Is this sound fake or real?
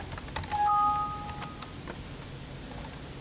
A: real